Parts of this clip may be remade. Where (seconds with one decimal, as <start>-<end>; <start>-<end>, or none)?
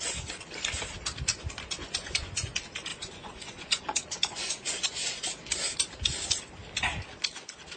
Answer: 1.8-2.5; 2.9-5.3